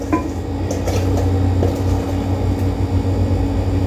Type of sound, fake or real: real